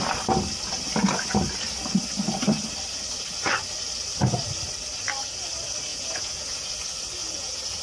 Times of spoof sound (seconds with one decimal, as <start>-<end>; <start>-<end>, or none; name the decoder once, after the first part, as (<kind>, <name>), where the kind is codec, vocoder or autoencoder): 5.9-6.7 (vocoder, Vocos); 7.2-7.8